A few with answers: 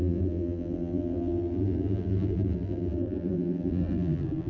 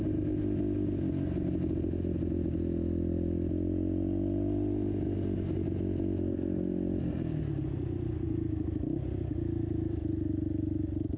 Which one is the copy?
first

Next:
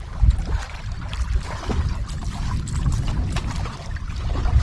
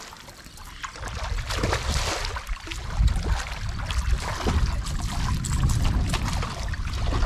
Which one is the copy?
first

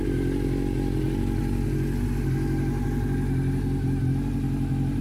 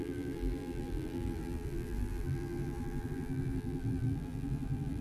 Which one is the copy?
second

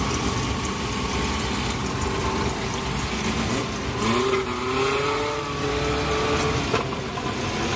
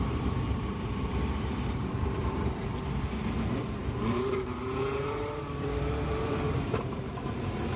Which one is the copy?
second